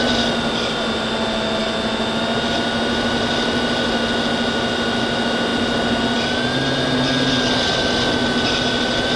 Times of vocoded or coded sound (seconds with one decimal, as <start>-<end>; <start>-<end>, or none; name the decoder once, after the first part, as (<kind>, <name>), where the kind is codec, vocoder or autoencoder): none